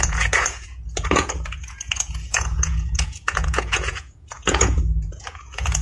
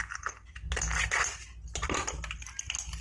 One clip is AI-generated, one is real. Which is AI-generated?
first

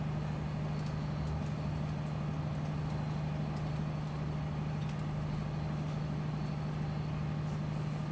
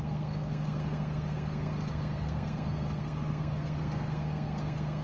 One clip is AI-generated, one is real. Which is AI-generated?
second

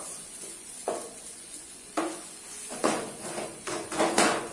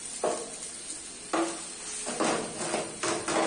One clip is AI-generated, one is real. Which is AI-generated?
first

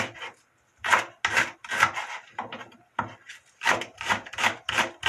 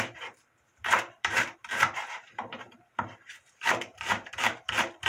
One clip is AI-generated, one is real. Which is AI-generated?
second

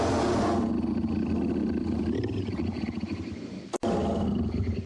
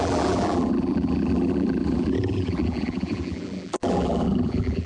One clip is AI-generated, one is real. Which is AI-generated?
second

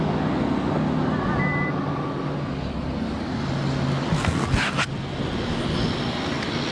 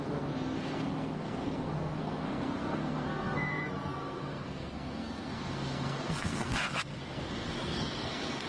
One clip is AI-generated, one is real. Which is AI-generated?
second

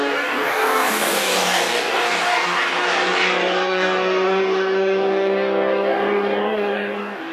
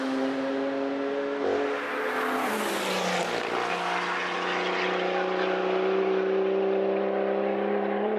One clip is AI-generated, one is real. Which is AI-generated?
first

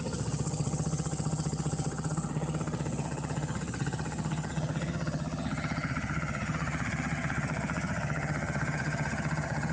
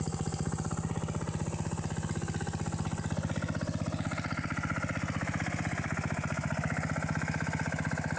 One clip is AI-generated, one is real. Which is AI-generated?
first